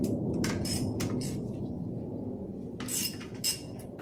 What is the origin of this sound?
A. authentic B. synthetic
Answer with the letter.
B